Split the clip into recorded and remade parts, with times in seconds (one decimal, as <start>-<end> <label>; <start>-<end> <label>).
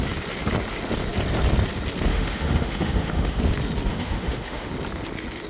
0.0-2.1 recorded; 2.1-3.4 remade; 3.4-3.9 recorded; 3.9-4.7 remade; 4.7-5.5 recorded